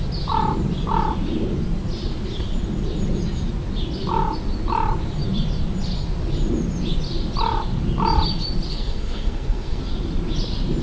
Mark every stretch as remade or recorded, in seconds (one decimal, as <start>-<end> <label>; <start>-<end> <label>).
0.0-8.7 recorded; 8.7-9.8 remade; 9.8-10.8 recorded